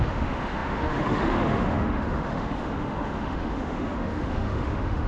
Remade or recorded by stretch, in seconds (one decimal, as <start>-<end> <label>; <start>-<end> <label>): 0.0-5.1 remade